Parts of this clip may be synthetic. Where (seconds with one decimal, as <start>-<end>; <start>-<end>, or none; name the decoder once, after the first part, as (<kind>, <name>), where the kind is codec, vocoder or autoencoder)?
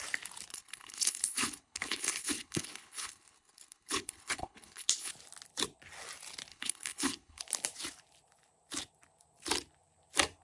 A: 0.5-5.1 (codec, HILCodec); 6.5-7.4